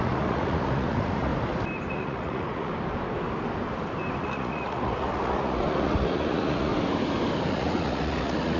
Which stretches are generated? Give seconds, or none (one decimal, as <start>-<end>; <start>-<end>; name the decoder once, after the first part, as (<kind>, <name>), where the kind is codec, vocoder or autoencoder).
0.0-1.3 (vocoder, Vocos); 1.9-2.7; 4.2-6.7; 7.5-8.6